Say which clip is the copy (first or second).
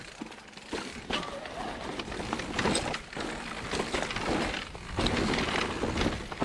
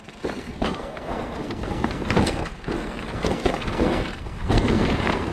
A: second